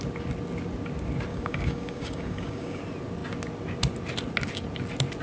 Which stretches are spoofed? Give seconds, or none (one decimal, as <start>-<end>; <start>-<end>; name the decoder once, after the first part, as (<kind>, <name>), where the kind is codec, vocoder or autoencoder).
1.3-2.8 (codec, DAC)